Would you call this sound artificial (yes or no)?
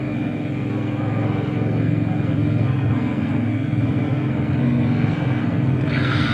yes